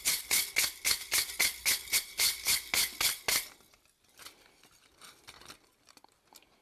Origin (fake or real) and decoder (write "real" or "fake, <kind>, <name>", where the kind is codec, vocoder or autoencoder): real